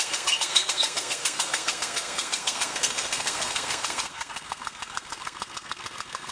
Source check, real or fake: fake